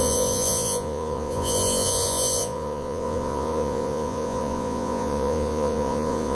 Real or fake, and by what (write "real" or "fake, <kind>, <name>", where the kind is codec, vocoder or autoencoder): fake, vocoder, Vocos